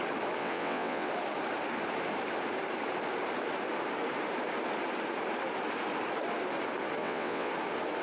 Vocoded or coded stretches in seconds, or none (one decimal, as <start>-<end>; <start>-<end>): 0.4-1.1; 7.0-7.5